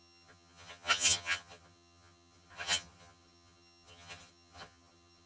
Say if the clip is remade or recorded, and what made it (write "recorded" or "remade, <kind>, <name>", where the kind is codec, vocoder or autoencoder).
remade, vocoder, HiFi-GAN